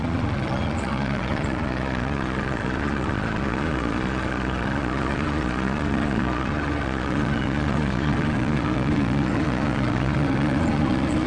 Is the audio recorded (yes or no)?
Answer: no